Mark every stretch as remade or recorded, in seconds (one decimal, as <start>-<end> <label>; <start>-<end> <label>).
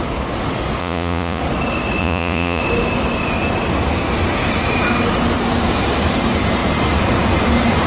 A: 0.0-0.8 recorded; 0.8-1.4 remade; 1.4-2.0 recorded; 2.0-2.6 remade; 2.6-7.9 recorded